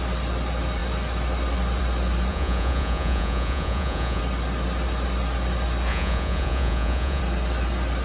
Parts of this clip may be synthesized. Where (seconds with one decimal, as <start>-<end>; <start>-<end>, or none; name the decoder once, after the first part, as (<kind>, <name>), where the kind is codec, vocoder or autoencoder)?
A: 2.3-4.2 (vocoder, Vocos); 5.9-7.2